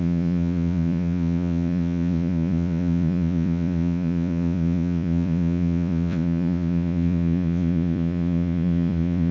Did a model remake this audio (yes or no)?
yes